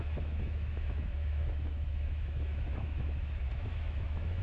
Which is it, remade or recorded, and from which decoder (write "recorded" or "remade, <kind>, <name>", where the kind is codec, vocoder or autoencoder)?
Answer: remade, autoencoder, DAC-VAE